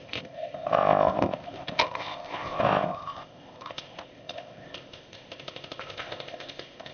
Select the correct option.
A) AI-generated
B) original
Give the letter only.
A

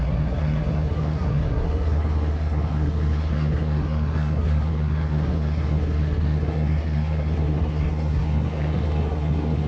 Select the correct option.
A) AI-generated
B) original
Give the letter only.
A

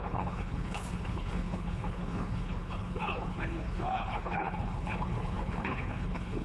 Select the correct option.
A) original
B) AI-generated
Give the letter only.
B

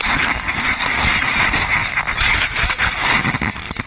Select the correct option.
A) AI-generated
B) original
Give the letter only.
B